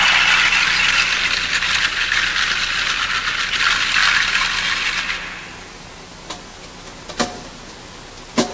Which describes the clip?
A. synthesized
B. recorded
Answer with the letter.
B